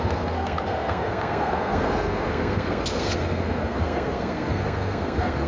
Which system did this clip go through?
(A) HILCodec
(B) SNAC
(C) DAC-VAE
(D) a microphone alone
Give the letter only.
B